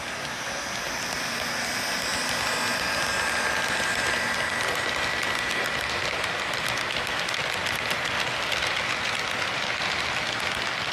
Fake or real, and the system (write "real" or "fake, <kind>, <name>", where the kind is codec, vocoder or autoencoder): real